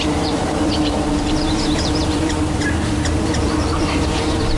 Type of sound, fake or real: fake